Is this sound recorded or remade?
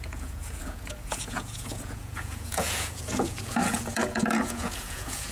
remade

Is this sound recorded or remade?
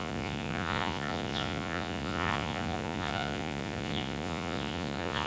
remade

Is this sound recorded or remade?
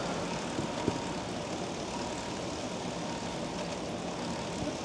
recorded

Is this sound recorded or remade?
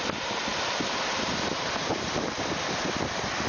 recorded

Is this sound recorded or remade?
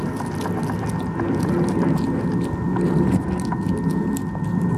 recorded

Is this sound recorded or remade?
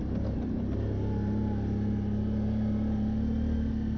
recorded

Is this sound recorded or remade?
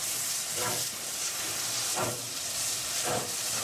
remade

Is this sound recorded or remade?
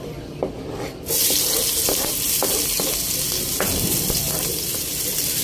recorded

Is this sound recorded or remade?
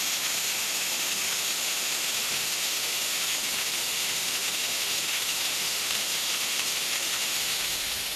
remade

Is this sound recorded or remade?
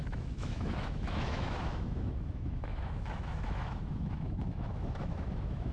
remade